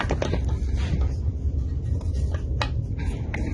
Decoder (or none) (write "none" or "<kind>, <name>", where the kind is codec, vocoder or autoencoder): none